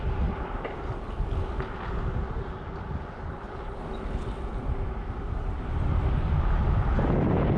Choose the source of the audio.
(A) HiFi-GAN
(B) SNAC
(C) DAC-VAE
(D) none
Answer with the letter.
D